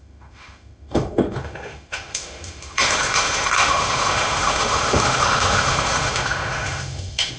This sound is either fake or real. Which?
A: fake